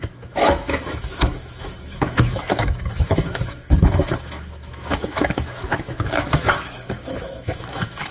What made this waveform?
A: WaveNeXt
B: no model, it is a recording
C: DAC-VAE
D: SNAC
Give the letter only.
C